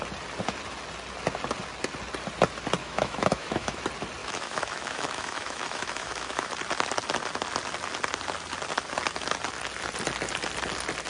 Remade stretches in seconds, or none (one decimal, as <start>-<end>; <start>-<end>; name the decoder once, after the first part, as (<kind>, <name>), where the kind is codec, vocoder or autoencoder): 2.8-3.8 (autoencoder, DAC-VAE); 4.2-6.5